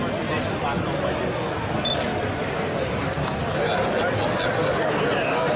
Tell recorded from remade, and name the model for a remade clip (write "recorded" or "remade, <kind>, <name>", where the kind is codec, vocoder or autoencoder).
recorded